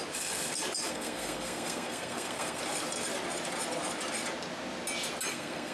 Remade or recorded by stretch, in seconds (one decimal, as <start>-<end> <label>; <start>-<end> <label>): 0.0-0.9 recorded; 0.9-2.6 remade; 2.6-5.3 recorded; 5.3-5.7 remade